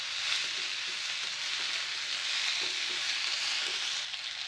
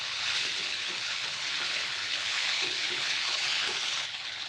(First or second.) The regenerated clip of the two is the second